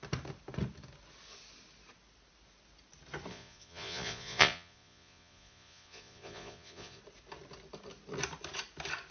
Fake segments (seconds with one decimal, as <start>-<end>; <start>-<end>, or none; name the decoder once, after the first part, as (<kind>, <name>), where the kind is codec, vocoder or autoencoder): 3.3-7.0 (vocoder, Vocos)